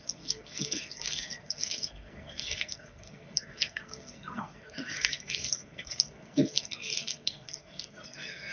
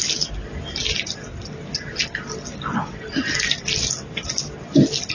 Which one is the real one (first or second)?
second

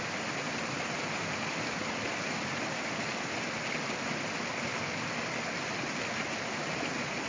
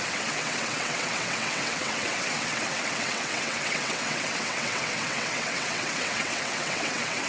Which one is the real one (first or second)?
first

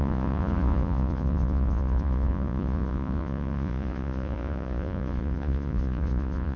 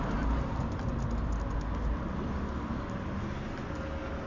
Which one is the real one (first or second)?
second